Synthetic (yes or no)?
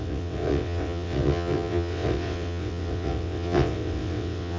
yes